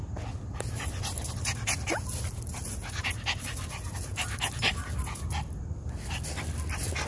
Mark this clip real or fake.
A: real